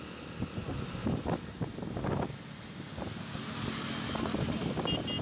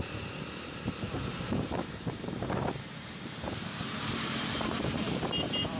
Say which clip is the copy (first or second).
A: second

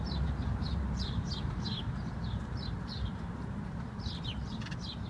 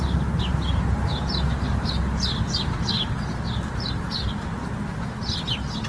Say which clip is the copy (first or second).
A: first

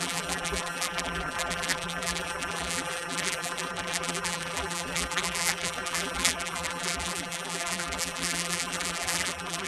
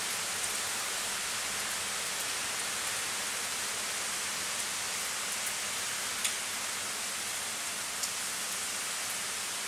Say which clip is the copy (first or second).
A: first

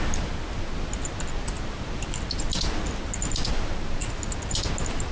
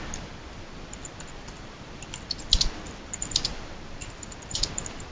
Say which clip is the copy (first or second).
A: second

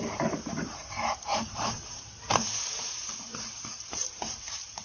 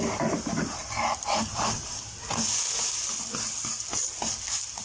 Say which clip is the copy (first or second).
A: first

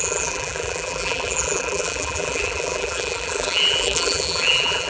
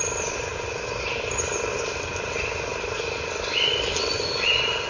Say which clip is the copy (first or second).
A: first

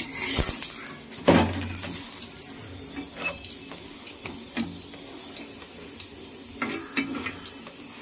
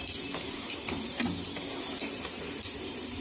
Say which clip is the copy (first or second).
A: second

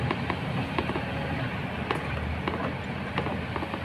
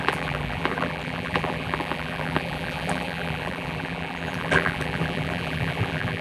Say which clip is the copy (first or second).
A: second